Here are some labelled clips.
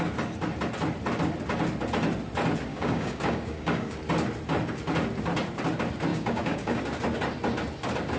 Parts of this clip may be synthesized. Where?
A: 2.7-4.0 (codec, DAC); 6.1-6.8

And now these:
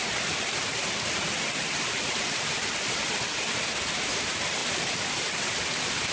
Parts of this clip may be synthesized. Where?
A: none

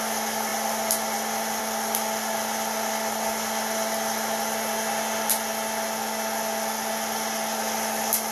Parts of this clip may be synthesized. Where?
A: none

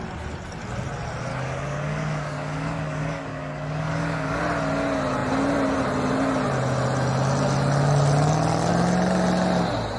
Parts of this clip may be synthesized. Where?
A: 1.3-4.4 (codec, DAC)

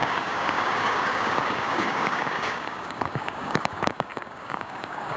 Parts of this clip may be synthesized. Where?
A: 0.0-5.2 (codec, DAC)